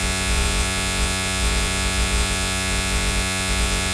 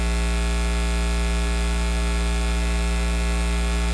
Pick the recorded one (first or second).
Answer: second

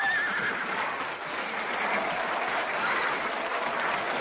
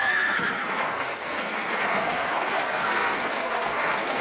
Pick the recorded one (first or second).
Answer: first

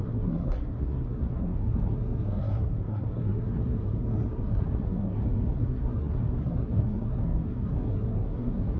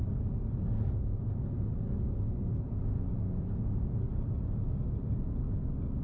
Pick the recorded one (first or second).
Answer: second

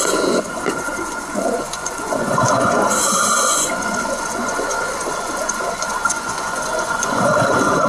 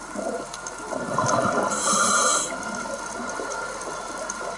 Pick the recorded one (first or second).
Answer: second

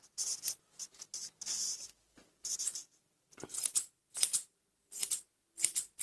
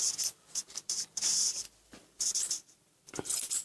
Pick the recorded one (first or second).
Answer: first